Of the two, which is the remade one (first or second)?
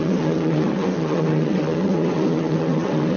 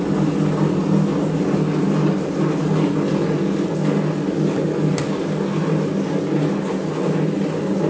first